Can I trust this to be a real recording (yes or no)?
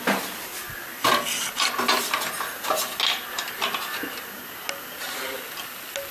yes